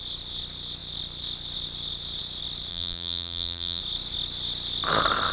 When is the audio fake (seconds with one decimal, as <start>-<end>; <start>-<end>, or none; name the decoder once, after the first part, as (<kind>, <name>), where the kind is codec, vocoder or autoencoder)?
2.7-3.8 (vocoder, BigVGAN v2)